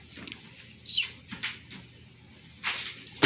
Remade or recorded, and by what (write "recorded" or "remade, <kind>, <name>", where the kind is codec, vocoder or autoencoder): recorded